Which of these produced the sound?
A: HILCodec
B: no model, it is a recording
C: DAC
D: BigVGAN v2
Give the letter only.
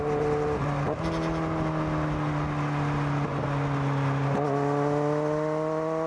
B